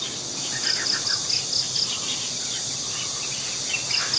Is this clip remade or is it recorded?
recorded